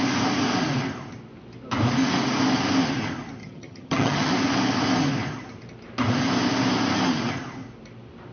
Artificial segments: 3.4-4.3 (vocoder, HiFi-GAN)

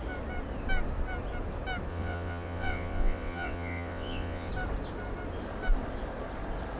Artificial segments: 1.9-4.5 (vocoder, WaveNeXt)

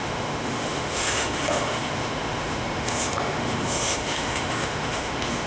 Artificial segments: 0.0-5.5 (autoencoder, DAC-VAE)

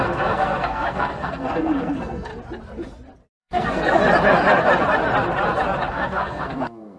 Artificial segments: 0.0-2.3 (codec, SNAC); 3.4-4.0; 5.9-7.0

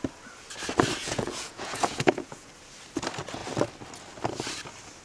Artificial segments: 1.0-2.5 (vocoder, Vocos)

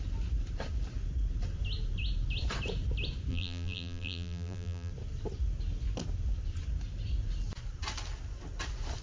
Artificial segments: 3.3-4.9 (vocoder, BigVGAN v2)